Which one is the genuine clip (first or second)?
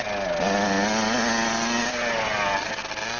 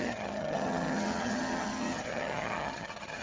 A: first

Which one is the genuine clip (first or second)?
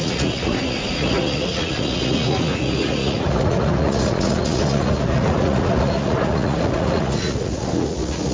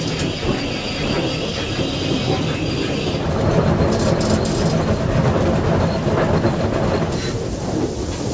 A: second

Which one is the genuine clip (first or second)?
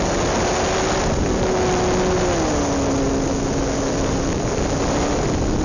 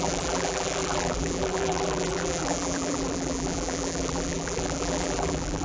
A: first